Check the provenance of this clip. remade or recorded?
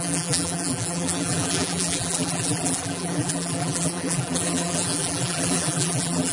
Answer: remade